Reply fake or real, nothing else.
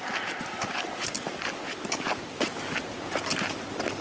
real